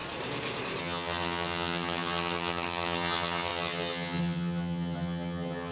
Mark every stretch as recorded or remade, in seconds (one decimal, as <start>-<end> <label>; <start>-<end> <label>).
0.0-0.8 recorded; 0.8-5.7 remade